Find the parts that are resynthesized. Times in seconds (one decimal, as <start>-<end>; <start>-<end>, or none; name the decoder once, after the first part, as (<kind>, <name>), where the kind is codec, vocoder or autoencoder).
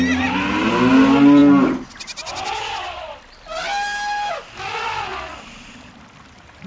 none